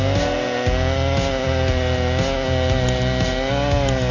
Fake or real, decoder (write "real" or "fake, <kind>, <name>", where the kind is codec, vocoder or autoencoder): real